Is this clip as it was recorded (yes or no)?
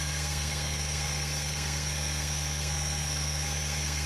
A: no